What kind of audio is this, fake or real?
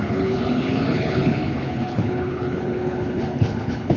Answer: fake